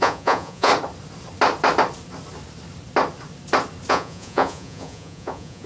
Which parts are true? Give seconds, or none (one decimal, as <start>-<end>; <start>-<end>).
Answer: 0.7-3.9